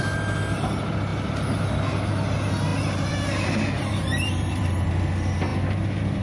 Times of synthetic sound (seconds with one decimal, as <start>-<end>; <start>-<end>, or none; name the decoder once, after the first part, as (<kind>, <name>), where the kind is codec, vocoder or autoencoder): 2.7-4.9 (vocoder, BigVGAN v2)